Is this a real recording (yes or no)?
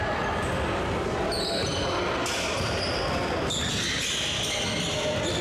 yes